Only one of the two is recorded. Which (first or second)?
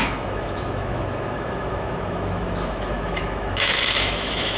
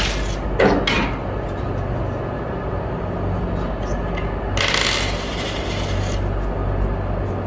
second